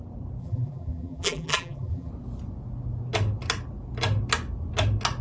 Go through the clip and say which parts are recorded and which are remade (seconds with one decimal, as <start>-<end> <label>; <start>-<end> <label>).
0.0-0.4 recorded; 0.4-2.1 remade; 2.1-5.2 recorded